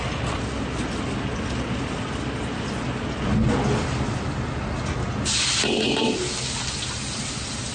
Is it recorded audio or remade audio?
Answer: recorded